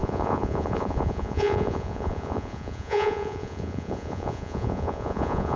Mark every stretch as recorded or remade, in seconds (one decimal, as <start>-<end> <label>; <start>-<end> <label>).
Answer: 0.0-5.6 remade